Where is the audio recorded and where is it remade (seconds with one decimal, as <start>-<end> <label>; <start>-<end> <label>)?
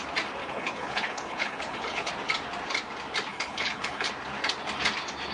0.0-0.4 recorded; 0.4-2.1 remade; 2.1-3.3 recorded; 3.3-4.1 remade; 4.1-5.3 recorded